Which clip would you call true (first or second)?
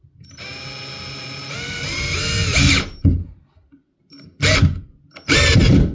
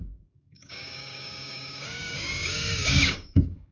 first